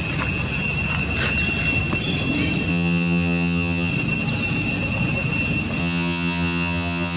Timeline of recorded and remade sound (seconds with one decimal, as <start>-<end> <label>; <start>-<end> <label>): 0.0-2.7 recorded; 2.7-3.9 remade; 3.9-5.8 recorded; 5.8-7.2 remade